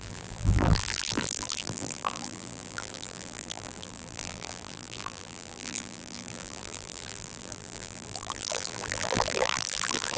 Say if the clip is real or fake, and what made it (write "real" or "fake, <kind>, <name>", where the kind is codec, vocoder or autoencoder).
fake, vocoder, BigVGAN v2